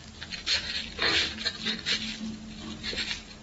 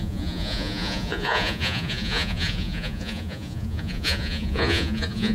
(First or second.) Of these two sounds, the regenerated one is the second